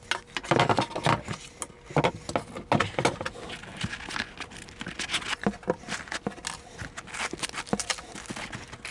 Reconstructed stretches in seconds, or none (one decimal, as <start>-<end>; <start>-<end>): none